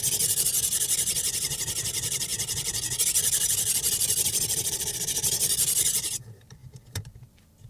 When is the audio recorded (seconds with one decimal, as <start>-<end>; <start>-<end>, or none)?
2.3-3.0